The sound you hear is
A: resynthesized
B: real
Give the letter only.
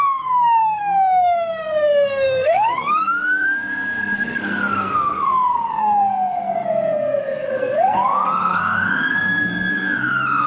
A